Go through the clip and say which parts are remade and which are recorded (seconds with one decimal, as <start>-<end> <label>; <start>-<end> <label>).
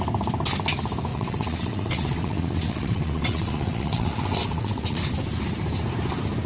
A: 0.0-1.1 recorded; 1.1-5.0 remade; 5.0-6.5 recorded